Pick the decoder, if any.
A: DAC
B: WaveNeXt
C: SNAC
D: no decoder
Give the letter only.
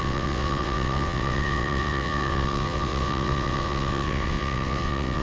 B